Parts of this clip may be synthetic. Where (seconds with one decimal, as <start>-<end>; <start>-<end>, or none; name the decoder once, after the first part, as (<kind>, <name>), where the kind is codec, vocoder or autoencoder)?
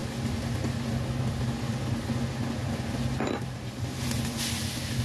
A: none